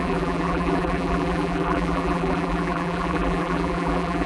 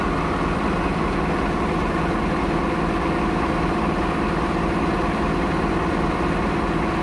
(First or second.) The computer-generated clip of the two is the first